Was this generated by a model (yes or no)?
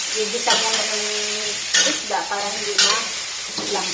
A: yes